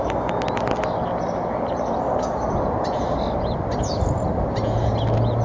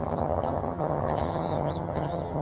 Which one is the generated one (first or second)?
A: second